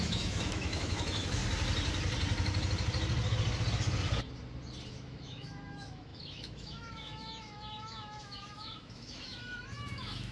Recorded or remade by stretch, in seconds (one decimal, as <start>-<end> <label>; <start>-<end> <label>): 0.0-1.4 remade; 1.4-4.9 recorded; 4.9-10.3 remade